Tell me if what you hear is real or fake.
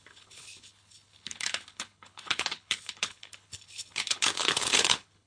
fake